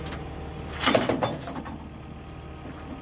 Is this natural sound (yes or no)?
yes